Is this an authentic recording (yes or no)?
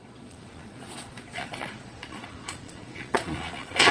no